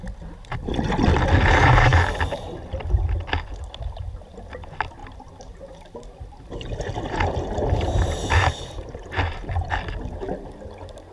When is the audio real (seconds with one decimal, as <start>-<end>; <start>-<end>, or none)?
0.0-5.0; 9.7-11.1